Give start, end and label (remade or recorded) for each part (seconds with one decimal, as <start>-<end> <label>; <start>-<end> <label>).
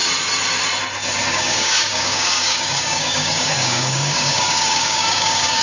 0.0-1.3 recorded; 1.3-5.6 remade